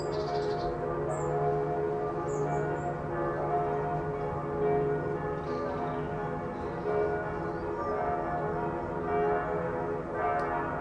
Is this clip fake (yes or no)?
no